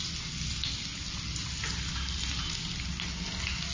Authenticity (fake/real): real